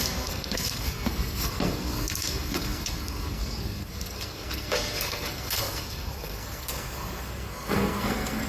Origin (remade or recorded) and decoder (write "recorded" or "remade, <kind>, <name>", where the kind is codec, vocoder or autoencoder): remade, codec, SNAC